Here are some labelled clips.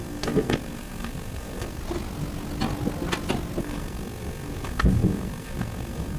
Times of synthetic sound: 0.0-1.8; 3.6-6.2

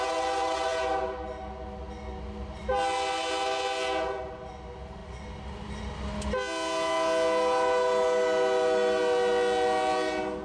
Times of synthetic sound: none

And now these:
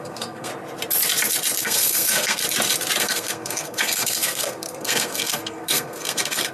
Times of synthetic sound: 0.0-0.5; 1.6-2.4; 3.0-6.5